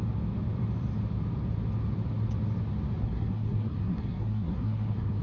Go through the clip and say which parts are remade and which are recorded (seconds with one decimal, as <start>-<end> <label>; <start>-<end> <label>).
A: 0.0-3.0 recorded; 3.0-5.2 remade